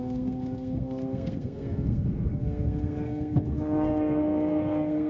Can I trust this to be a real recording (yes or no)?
no